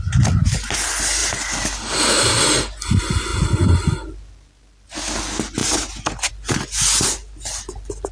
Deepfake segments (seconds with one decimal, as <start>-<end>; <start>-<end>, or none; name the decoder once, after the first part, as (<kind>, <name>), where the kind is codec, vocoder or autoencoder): none